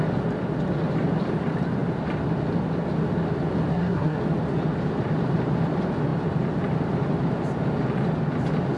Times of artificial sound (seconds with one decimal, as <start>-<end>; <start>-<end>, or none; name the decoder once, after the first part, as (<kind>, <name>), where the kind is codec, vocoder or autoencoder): 3.7-4.2 (codec, SNAC)